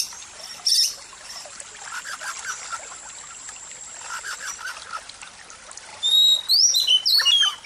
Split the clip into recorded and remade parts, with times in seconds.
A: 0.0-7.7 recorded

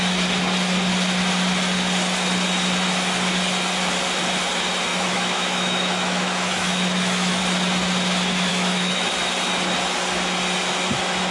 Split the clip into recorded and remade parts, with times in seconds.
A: 0.0-4.9 recorded; 4.9-7.4 remade; 7.4-8.5 recorded; 8.5-9.1 remade; 9.1-11.3 recorded

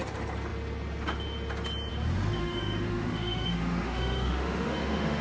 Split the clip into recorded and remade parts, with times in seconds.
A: 0.0-2.4 recorded; 2.4-5.2 remade

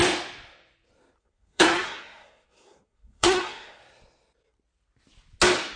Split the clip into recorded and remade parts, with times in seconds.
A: 0.0-1.2 recorded; 1.2-3.8 remade; 3.8-5.8 recorded

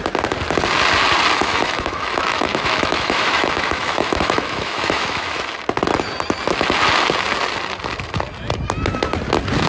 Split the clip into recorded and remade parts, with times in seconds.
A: 0.0-1.4 recorded; 1.4-5.4 remade; 5.4-9.7 recorded

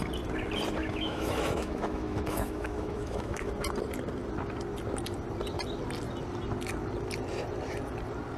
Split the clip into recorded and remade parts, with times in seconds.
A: 0.0-0.8 recorded; 0.8-3.5 remade; 3.5-8.4 recorded